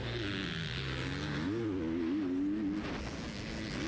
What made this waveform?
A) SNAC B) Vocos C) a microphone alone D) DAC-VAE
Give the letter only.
C